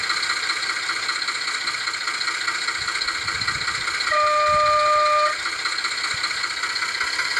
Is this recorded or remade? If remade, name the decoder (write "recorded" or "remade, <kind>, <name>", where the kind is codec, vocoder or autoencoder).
recorded